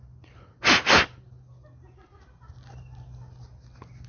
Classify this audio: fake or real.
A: real